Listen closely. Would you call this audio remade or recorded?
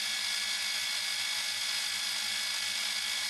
recorded